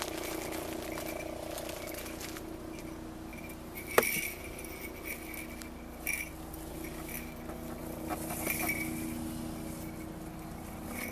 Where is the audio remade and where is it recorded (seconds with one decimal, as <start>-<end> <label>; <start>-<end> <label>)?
0.0-11.1 recorded